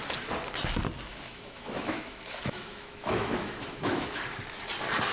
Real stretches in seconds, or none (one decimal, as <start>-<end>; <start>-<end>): 0.0-1.1; 4.2-5.1